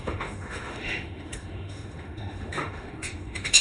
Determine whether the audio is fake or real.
fake